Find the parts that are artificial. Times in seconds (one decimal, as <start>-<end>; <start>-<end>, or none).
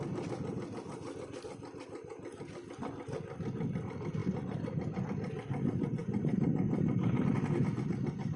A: 4.2-5.0; 6.0-7.3